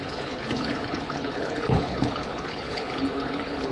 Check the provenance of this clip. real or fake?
fake